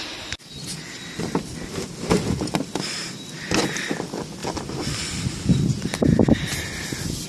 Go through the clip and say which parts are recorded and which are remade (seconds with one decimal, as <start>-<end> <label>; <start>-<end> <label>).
0.0-7.3 recorded